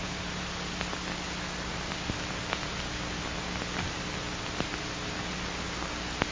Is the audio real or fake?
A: real